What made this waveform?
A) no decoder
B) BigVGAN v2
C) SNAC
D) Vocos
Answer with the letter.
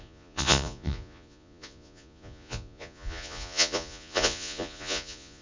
D